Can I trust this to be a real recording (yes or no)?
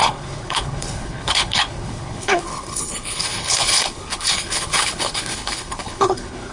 no